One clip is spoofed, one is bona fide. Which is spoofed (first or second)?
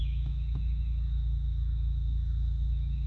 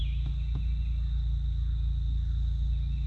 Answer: first